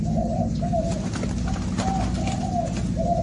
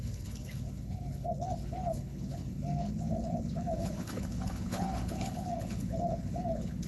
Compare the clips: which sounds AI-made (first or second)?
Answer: second